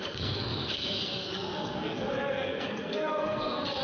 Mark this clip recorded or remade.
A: remade